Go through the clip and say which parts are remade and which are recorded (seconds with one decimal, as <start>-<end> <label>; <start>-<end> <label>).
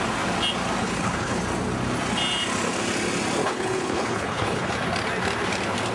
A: 0.0-0.8 recorded; 0.8-1.4 remade; 1.4-3.4 recorded; 3.4-4.7 remade; 4.7-5.9 recorded